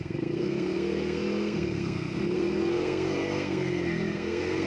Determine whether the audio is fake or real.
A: fake